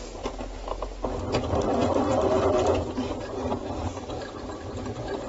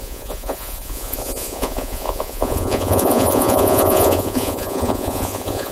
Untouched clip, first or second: first